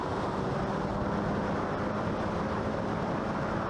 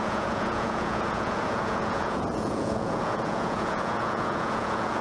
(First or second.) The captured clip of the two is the first